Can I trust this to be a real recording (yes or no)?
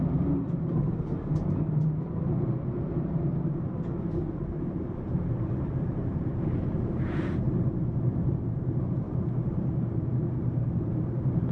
no